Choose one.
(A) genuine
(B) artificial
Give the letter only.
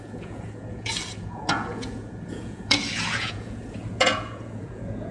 B